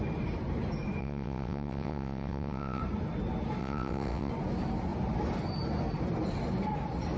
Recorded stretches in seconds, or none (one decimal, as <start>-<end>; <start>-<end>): 0.0-1.0; 2.8-3.6; 4.3-7.2